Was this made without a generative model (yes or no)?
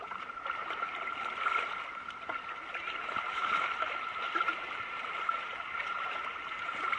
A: no